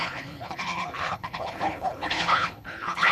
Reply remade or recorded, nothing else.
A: remade